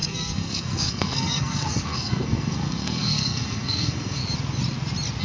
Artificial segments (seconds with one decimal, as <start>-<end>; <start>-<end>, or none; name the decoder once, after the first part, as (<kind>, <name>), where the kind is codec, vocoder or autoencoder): 0.0-4.2 (codec, SNAC)